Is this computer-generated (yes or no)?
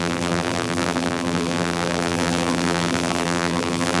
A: yes